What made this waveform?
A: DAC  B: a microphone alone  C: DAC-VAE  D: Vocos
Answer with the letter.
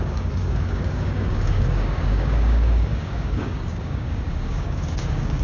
A